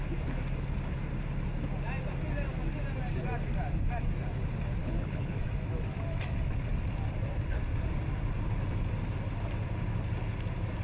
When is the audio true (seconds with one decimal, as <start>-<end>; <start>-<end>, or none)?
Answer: 0.0-4.8; 5.4-10.8